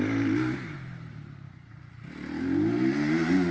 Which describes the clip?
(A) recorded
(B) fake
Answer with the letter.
A